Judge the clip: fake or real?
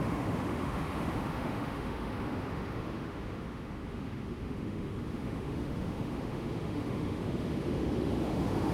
fake